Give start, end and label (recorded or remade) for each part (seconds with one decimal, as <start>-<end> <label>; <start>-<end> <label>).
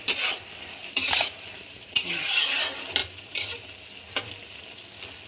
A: 0.0-0.8 recorded; 0.8-2.6 remade; 2.6-3.0 recorded; 3.0-4.3 remade; 4.3-5.3 recorded